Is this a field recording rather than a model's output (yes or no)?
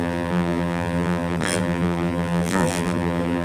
no